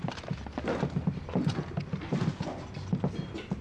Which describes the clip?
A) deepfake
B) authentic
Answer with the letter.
B